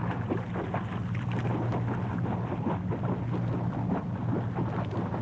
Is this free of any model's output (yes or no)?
yes